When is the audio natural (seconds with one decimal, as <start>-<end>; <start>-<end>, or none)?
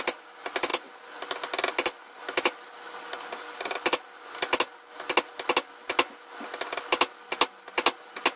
0.0-8.4